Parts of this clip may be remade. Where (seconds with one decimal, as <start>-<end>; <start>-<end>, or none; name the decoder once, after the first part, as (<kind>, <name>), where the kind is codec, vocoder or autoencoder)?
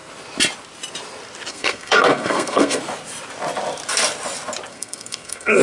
1.5-2.8 (codec, SNAC); 4.7-5.6